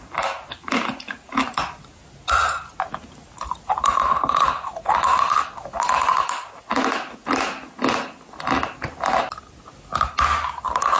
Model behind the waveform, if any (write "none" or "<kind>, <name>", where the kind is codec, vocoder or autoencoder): none